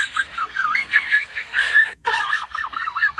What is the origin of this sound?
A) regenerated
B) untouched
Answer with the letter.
A